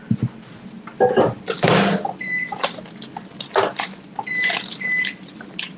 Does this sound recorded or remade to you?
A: recorded